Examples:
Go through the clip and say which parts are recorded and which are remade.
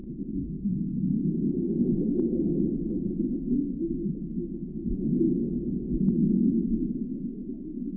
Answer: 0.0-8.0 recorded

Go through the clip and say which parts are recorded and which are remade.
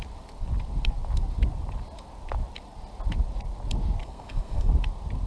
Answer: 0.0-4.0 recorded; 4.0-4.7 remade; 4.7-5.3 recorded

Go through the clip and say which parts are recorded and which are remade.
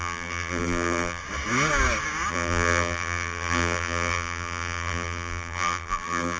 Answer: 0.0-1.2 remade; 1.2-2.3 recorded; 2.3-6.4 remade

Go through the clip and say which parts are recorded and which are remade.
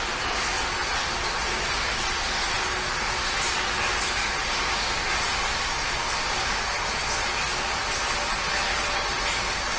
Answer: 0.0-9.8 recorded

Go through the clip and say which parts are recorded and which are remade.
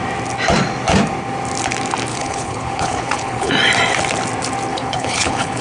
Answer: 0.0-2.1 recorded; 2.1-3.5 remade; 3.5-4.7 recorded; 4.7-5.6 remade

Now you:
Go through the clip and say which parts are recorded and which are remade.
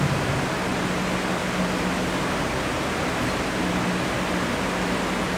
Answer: 0.0-5.4 recorded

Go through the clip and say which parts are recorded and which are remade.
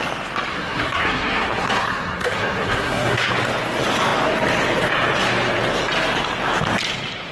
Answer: 0.0-0.5 recorded; 0.5-3.3 remade; 3.3-7.3 recorded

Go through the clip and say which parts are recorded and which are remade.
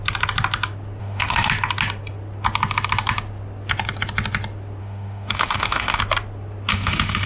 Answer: 0.0-1.0 recorded; 1.0-1.5 remade; 1.5-4.8 recorded; 4.8-6.0 remade; 6.0-6.7 recorded; 6.7-7.3 remade